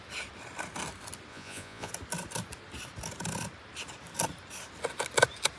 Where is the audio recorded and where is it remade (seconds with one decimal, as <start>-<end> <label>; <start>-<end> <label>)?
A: 0.0-1.3 recorded; 1.3-1.9 remade; 1.9-5.6 recorded